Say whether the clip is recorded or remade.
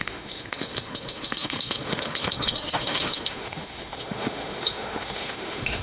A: remade